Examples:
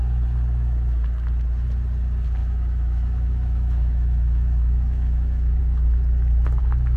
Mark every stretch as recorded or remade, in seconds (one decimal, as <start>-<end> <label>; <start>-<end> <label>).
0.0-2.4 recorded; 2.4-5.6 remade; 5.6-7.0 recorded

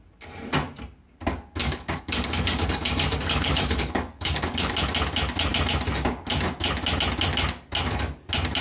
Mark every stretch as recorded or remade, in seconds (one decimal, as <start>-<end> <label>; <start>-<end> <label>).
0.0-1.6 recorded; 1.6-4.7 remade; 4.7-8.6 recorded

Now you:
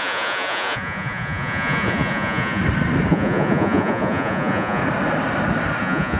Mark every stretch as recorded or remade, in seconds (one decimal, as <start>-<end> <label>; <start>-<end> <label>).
0.0-2.6 remade; 2.6-3.1 recorded; 3.1-4.8 remade; 4.8-5.8 recorded; 5.8-6.2 remade

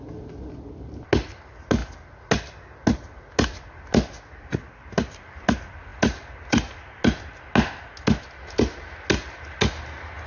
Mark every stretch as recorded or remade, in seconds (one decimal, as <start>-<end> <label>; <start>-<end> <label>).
0.0-10.3 recorded

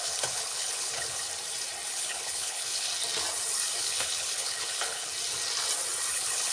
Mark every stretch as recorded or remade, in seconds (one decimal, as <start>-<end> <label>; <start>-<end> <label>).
0.0-1.3 remade; 1.3-1.9 recorded; 1.9-2.9 remade; 2.9-3.8 recorded; 3.8-5.1 remade; 5.1-6.1 recorded; 6.1-6.5 remade